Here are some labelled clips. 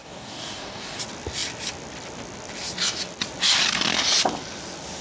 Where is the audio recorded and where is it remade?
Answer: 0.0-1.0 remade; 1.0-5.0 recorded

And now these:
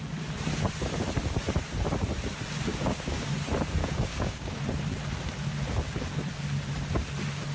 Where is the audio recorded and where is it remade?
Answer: 0.0-2.7 recorded; 2.7-3.3 remade; 3.3-3.8 recorded; 3.8-4.6 remade; 4.6-7.5 recorded